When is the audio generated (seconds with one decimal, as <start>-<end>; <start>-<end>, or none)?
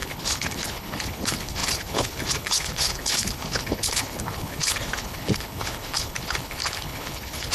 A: 0.0-7.5